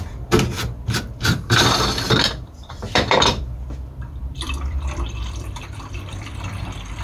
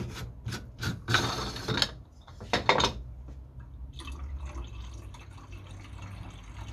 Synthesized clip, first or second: first